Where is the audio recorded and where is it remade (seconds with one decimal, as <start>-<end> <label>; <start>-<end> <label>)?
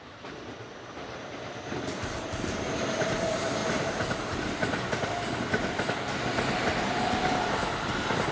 0.0-3.6 recorded; 3.6-5.7 remade; 5.7-8.3 recorded